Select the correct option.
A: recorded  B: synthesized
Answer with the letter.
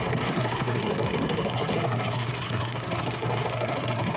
B